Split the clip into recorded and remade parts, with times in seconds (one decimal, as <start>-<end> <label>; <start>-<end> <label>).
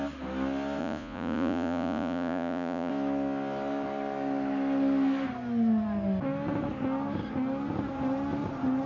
0.0-0.8 recorded; 0.8-2.9 remade; 2.9-8.9 recorded